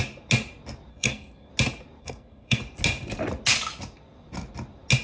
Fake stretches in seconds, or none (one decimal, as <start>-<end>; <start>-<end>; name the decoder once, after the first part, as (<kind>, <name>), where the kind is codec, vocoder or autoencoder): 0.9-1.5 (codec, SNAC); 2.0-2.6

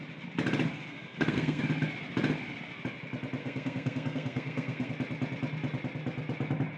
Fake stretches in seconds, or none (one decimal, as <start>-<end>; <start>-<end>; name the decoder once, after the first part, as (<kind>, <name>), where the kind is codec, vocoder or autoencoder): 0.7-1.6 (codec, SNAC); 3.4-4.9

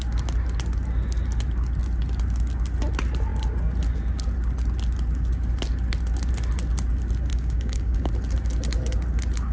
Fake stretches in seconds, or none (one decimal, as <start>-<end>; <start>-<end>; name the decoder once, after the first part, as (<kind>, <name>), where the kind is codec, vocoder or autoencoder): 7.3-8.1 (codec, DAC)